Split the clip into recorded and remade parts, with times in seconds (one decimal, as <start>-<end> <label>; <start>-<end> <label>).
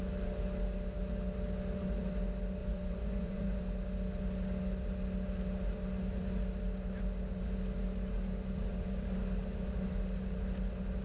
0.0-2.6 recorded; 2.6-3.6 remade; 3.6-11.0 recorded